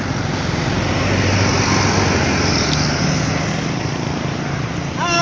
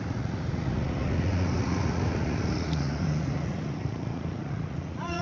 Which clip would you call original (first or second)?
first